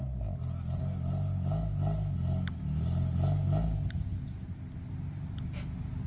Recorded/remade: recorded